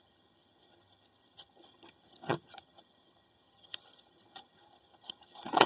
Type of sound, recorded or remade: remade